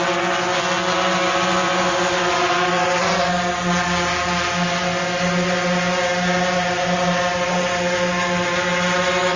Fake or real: real